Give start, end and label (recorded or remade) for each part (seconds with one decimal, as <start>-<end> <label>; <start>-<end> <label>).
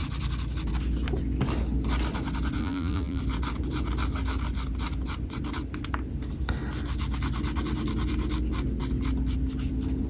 0.0-2.6 recorded; 2.6-3.2 remade; 3.2-10.1 recorded